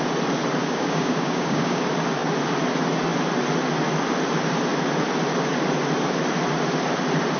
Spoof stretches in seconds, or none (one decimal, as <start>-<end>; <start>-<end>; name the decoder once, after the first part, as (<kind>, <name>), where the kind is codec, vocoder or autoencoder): 0.6-1.8 (codec, DAC)